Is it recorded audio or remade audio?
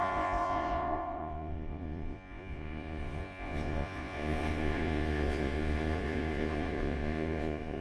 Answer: remade